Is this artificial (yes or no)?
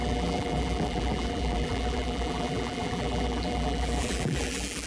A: yes